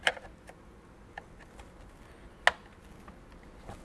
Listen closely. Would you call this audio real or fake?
real